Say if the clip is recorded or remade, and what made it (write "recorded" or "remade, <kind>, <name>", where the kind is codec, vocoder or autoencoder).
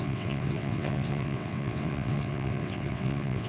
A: remade, vocoder, WaveNeXt